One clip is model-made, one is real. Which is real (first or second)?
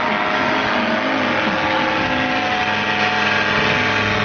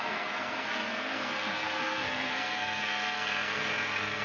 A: first